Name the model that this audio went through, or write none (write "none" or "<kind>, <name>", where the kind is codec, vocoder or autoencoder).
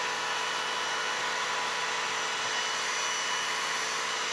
none